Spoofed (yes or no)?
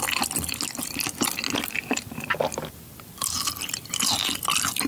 no